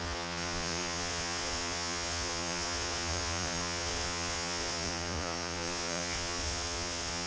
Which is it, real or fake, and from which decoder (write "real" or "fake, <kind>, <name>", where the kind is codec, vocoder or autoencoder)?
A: fake, vocoder, Vocos